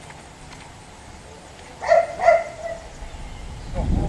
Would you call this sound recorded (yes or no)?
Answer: yes